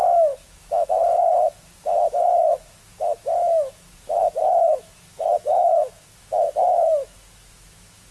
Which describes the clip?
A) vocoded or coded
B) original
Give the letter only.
A